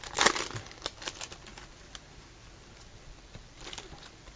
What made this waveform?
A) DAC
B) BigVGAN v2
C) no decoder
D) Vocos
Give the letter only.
C